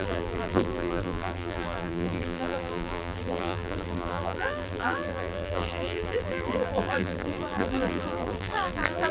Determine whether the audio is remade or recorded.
remade